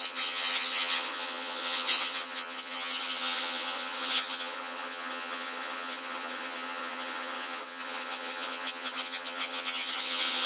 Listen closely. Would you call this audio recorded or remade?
remade